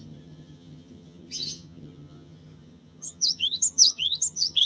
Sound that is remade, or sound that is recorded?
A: remade